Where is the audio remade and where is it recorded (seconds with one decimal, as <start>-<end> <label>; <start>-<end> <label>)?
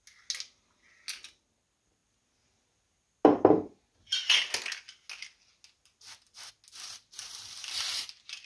0.0-8.5 recorded